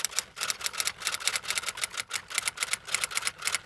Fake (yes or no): no